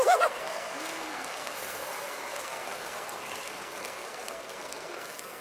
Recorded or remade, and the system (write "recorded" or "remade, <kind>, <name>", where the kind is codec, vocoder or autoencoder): remade, codec, SNAC